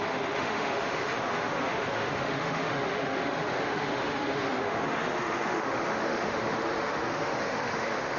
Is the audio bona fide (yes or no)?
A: no